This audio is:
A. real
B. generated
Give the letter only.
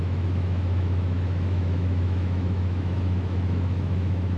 B